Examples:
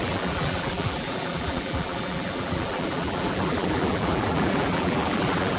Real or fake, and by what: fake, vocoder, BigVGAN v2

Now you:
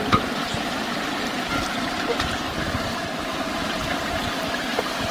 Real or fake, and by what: fake, vocoder, BigVGAN v2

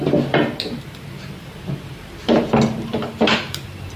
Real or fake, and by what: fake, vocoder, BigVGAN v2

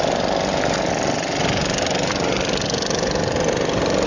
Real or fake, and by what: real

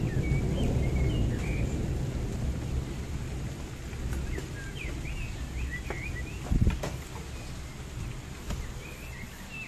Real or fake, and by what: real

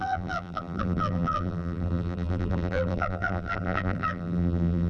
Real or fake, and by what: fake, vocoder, BigVGAN v2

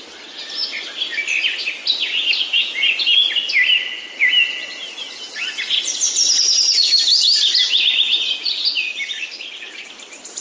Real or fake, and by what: real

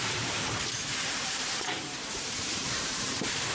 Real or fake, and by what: fake, vocoder, BigVGAN v2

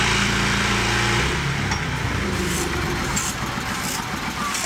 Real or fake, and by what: fake, vocoder, BigVGAN v2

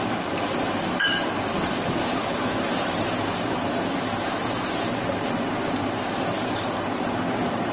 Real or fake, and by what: fake, vocoder, BigVGAN v2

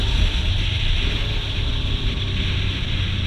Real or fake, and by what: real